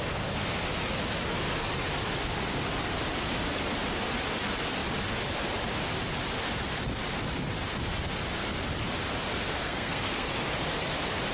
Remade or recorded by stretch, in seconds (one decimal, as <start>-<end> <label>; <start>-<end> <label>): 0.0-9.5 recorded; 9.5-10.3 remade; 10.3-11.3 recorded